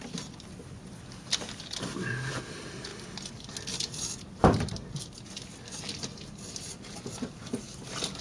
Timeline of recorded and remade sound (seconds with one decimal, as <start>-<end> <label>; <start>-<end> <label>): 0.0-8.2 recorded